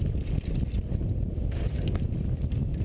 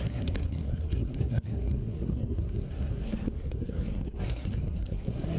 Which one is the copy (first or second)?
second